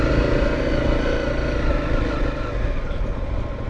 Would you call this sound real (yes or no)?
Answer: yes